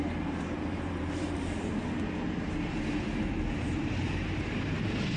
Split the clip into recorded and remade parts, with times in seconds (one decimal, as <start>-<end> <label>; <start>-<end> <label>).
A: 0.0-1.8 remade; 1.8-3.5 recorded; 3.5-5.2 remade